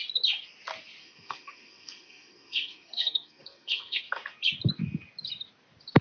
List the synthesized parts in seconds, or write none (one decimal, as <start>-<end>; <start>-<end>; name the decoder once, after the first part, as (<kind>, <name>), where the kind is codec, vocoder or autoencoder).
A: 1.0-4.0 (codec, SNAC)